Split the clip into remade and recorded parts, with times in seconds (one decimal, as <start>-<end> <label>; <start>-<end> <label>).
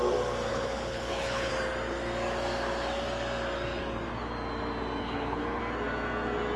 0.0-0.5 recorded; 0.5-1.5 remade; 1.5-5.0 recorded; 5.0-5.6 remade; 5.6-6.6 recorded